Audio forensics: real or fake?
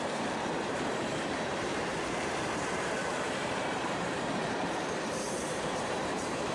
fake